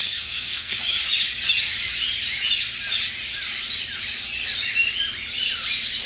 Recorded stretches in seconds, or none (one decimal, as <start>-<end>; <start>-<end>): 0.8-6.1